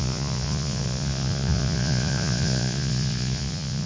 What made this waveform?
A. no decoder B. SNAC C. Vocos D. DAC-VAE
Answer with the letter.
C